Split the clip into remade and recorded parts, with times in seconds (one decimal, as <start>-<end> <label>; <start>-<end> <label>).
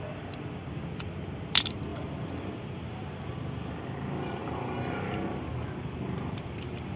0.0-1.9 recorded; 1.9-3.7 remade; 3.7-7.0 recorded